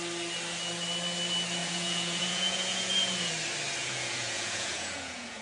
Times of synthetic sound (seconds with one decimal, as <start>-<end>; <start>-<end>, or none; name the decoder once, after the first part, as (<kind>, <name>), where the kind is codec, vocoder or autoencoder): 1.6-3.3 (vocoder, Vocos); 3.8-5.4